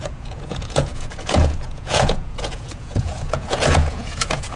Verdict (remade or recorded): remade